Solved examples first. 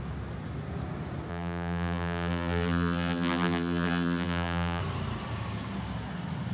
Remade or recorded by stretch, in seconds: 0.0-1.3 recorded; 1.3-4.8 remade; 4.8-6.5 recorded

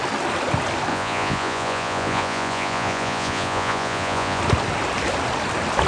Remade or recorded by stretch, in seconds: 0.0-0.9 recorded; 0.9-4.4 remade; 4.4-5.9 recorded

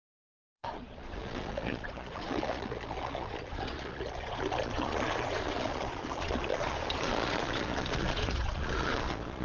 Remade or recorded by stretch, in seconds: 0.0-9.4 remade